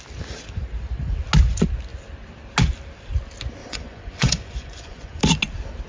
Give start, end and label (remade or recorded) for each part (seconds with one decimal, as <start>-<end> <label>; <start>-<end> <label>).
0.0-3.6 recorded; 3.6-5.2 remade; 5.2-5.9 recorded